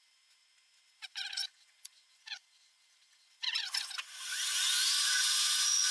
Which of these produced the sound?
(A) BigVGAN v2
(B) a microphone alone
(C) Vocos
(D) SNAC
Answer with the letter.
C